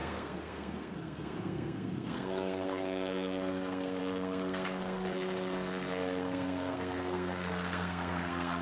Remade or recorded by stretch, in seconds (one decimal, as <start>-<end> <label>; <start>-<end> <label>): 0.0-8.6 remade